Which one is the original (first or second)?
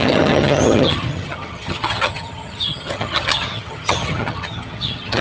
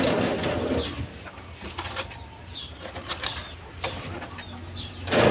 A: second